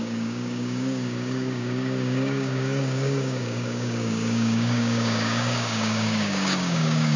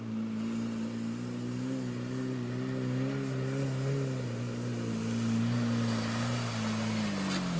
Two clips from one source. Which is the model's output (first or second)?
first